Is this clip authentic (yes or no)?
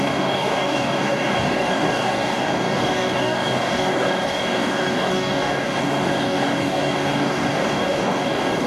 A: no